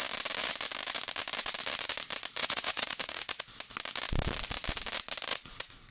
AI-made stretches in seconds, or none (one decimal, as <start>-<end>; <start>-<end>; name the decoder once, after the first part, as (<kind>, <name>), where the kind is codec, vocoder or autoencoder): 2.4-3.4 (vocoder, Vocos); 5.3-5.9